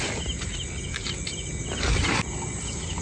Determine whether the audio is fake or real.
real